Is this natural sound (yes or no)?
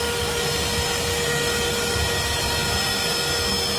yes